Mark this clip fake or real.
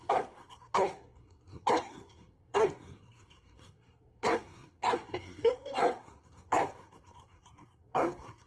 fake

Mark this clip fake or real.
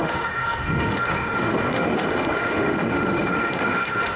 fake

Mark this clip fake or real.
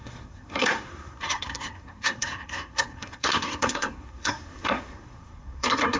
fake